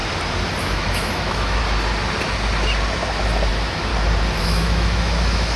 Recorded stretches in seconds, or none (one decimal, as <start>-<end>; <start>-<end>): 0.0-0.6; 1.6-3.5; 3.9-4.4